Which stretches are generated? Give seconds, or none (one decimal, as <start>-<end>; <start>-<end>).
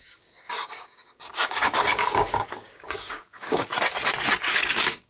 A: 0.0-3.7; 4.5-5.1